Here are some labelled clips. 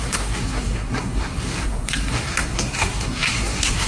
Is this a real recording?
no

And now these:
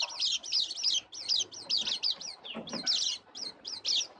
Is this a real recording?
yes